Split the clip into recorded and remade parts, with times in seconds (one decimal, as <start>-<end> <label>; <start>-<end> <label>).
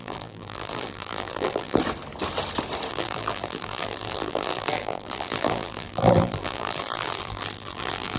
0.0-1.8 remade; 1.8-2.9 recorded; 2.9-8.2 remade